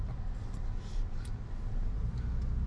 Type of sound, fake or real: real